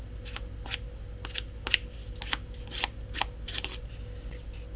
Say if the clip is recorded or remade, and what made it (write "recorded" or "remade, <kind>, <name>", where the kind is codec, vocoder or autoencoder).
recorded